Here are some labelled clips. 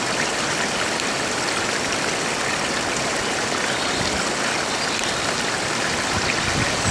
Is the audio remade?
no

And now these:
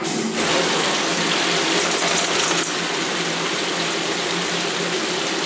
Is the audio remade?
no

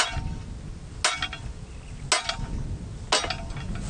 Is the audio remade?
no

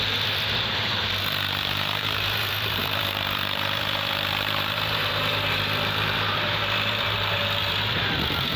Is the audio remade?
yes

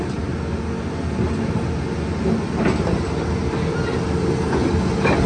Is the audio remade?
no